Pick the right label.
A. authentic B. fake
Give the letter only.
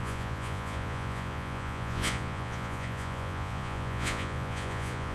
B